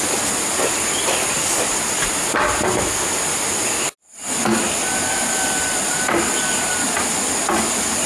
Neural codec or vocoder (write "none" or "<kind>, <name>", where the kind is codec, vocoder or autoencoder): none